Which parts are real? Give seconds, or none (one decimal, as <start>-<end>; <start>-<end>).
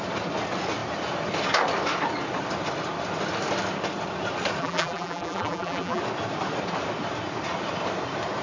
0.0-4.6; 6.0-8.4